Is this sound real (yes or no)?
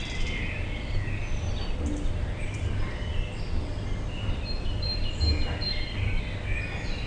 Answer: yes